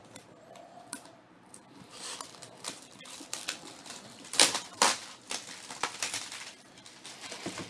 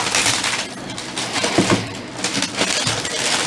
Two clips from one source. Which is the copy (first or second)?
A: first